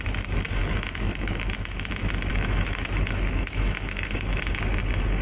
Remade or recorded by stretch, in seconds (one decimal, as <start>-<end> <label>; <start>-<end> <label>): 0.0-0.6 recorded; 0.6-1.9 remade; 1.9-2.3 recorded; 2.3-4.4 remade; 4.4-5.2 recorded